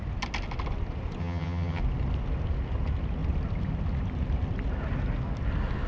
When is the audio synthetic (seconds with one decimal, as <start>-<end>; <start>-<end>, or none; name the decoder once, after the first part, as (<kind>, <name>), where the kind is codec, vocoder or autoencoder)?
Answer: 1.2-1.8 (vocoder, HiFi-GAN)